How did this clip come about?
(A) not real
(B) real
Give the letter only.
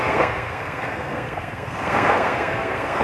A